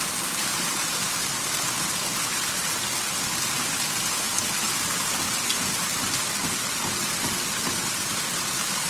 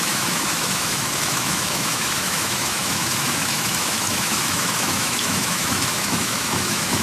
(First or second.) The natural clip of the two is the first